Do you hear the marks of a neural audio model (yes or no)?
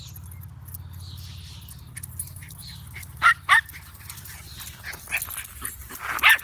no